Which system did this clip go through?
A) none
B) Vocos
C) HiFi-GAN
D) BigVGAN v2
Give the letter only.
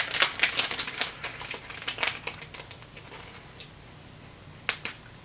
A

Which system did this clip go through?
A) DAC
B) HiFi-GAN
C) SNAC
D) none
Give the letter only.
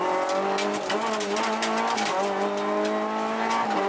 D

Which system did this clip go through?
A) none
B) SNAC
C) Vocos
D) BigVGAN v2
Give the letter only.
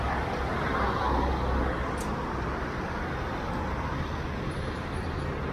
A